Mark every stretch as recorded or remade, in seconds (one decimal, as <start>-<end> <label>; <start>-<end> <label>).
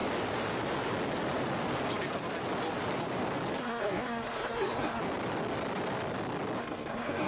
0.0-3.6 recorded; 3.6-5.0 remade; 5.0-6.6 recorded; 6.6-7.3 remade